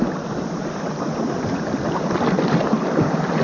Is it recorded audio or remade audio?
recorded